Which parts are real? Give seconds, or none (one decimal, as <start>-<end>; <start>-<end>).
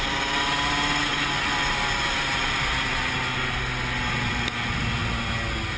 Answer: 0.0-5.8